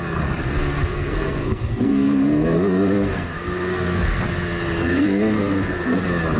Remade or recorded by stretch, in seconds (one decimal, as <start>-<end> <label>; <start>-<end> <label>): 0.0-0.4 recorded; 0.4-4.2 remade; 4.2-4.8 recorded; 4.8-6.0 remade; 6.0-6.4 recorded

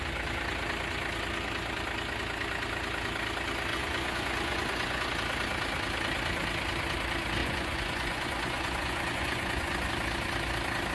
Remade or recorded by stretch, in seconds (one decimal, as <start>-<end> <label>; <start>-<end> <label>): 0.0-3.7 recorded; 3.7-5.1 remade; 5.1-7.4 recorded; 7.4-9.9 remade; 9.9-10.9 recorded

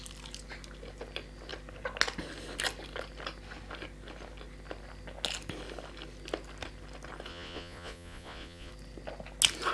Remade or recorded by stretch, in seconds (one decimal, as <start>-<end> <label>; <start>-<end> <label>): 0.0-7.3 recorded; 7.3-8.7 remade; 8.7-9.7 recorded

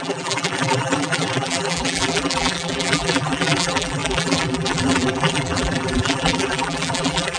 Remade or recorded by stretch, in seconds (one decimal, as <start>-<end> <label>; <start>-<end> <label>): 0.0-7.4 remade

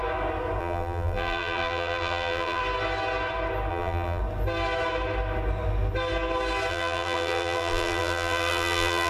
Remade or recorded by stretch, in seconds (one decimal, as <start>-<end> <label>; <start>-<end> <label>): 0.0-0.6 recorded; 0.6-2.6 remade; 2.6-3.7 recorded; 3.7-4.2 remade; 4.2-6.7 recorded; 6.7-9.1 remade

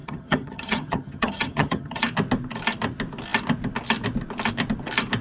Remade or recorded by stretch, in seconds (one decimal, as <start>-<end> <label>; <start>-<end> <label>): 0.0-2.0 remade; 2.0-5.2 recorded

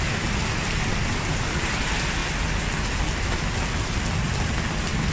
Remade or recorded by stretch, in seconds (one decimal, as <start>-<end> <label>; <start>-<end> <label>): 0.0-5.1 recorded